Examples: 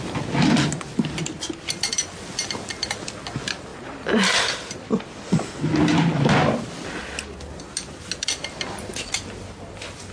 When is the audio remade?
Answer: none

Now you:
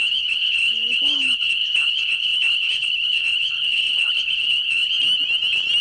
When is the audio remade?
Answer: 0.0-4.9 (codec, HILCodec)

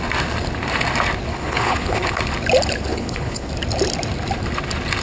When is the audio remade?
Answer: 1.3-2.2 (codec, HILCodec); 2.9-3.5

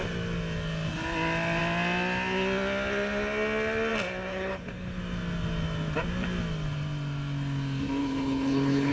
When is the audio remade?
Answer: 4.3-5.0 (codec, HILCodec); 8.0-8.9

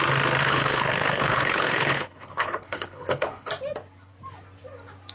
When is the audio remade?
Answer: 0.4-3.5 (codec, HILCodec)

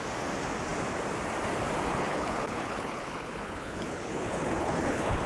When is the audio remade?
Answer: 1.9-5.3 (codec, HILCodec)

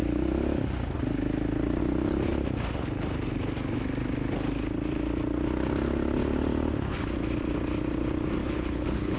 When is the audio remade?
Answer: 8.4-9.2 (codec, HILCodec)